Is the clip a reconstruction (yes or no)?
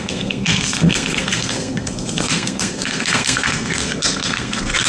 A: yes